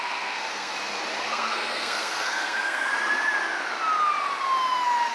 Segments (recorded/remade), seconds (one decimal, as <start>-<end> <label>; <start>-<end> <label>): 0.0-0.7 remade; 0.7-1.2 recorded; 1.2-2.9 remade; 2.9-5.1 recorded